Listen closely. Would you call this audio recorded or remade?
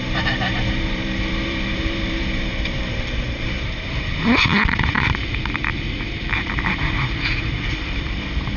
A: remade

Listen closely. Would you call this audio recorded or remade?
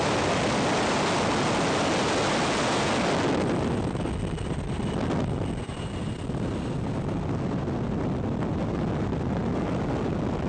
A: recorded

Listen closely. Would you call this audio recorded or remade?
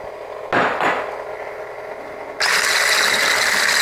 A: recorded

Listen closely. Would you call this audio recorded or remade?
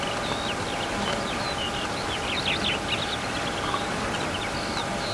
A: recorded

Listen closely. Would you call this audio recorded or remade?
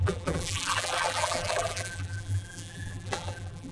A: remade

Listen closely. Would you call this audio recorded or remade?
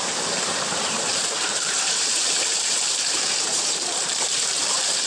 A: remade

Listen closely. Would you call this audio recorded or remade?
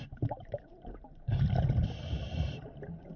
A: remade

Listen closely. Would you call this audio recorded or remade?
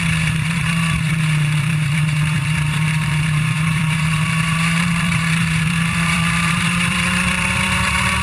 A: remade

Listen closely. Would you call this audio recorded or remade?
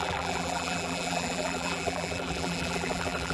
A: remade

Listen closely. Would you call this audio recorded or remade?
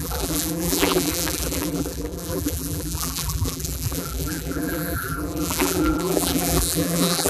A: remade